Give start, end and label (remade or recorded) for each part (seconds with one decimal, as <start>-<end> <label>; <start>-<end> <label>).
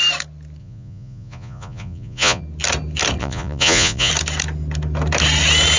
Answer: 0.0-0.6 recorded; 0.6-2.4 remade; 2.4-3.2 recorded; 3.2-4.1 remade; 4.1-5.8 recorded